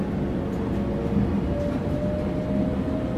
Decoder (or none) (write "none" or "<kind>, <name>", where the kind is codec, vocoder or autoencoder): none